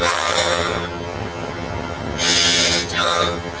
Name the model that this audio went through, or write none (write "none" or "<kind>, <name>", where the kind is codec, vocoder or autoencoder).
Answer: vocoder, HiFi-GAN